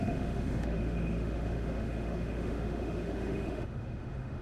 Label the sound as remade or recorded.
remade